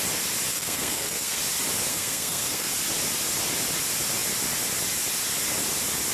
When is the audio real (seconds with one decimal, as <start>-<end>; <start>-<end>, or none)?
0.0-0.5; 1.4-1.9; 2.7-6.1